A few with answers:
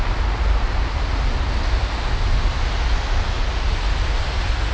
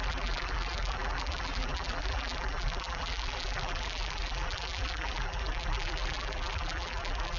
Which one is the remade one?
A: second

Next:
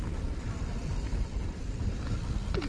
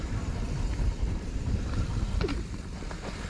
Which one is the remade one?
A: second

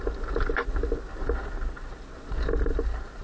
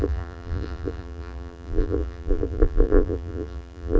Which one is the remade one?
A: second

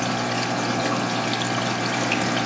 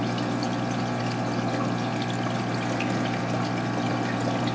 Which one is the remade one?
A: first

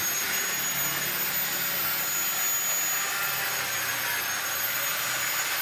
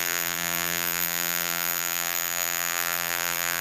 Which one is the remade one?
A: second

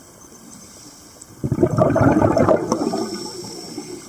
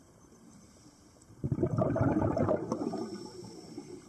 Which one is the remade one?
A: second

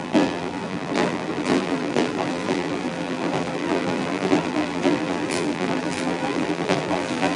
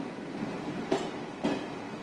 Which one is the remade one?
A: first